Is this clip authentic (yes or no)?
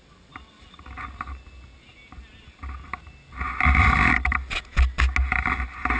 yes